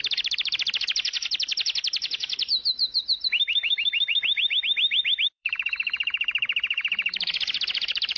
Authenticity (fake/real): fake